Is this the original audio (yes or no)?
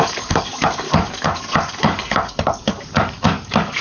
no